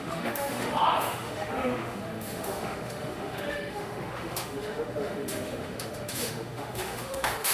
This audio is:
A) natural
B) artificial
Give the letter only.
B